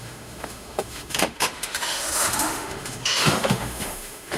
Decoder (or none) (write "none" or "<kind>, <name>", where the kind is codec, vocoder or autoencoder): autoencoder, DAC-VAE